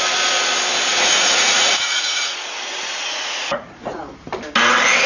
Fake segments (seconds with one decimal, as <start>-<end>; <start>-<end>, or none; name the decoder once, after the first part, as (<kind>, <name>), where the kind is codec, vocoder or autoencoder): 0.9-4.0 (vocoder, Vocos)